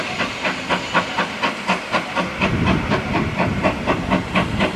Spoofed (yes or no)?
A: no